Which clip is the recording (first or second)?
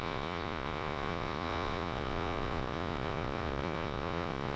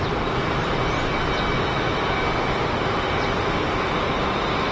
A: second